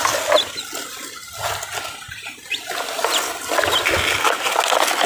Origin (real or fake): real